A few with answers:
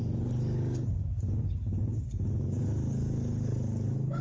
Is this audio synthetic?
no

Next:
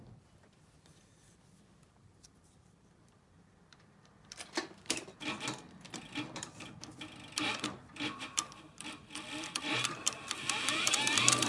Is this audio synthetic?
yes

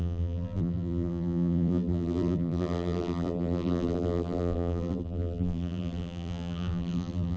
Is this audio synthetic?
yes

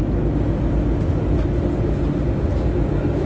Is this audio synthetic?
no